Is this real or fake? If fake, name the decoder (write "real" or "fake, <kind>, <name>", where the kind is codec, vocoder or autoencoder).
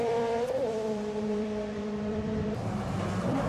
fake, vocoder, BigVGAN v2